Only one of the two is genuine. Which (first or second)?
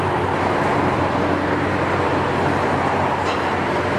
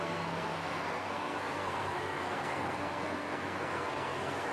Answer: first